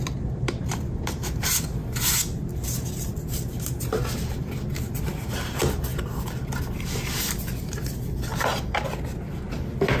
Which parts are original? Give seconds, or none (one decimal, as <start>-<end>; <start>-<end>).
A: 0.0-10.0